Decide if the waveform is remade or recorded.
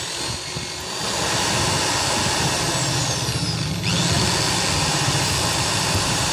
recorded